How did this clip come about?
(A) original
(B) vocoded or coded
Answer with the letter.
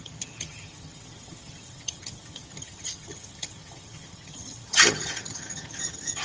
B